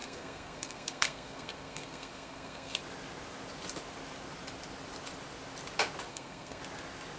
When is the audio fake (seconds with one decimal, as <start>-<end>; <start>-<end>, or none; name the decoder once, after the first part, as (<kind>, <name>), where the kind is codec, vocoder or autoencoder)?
0.0-2.8 (codec, SNAC); 6.1-6.6